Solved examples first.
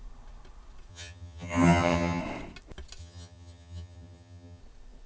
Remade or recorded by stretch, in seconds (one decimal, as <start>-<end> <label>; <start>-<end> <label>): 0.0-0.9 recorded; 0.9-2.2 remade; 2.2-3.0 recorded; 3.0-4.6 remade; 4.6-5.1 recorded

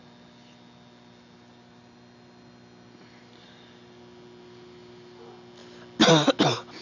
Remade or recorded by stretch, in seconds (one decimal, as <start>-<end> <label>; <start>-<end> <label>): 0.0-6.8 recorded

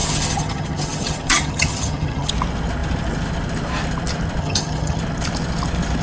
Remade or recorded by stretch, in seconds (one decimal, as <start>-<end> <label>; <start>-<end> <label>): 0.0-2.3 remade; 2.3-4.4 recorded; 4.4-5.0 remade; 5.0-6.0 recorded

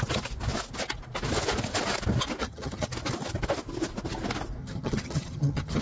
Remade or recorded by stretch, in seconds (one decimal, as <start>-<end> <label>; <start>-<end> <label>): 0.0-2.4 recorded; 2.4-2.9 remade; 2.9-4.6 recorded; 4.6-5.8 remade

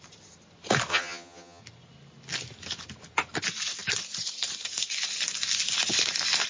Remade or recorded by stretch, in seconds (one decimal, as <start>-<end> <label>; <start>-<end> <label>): 0.0-0.9 recorded; 0.9-1.6 remade; 1.6-6.5 recorded

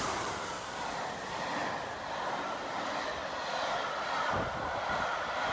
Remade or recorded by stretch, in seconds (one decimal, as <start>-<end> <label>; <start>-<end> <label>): 0.0-5.5 recorded

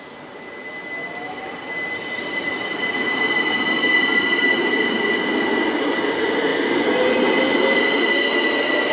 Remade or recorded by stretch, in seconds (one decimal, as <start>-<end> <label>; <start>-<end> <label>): 0.0-8.9 recorded

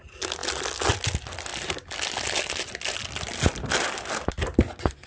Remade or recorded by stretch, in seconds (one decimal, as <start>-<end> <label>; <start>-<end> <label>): 0.0-5.1 recorded